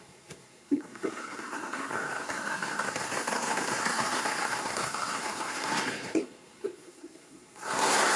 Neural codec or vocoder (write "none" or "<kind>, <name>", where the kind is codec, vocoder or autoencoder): codec, SNAC